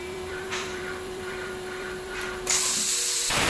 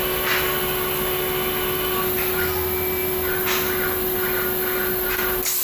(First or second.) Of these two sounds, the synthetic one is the first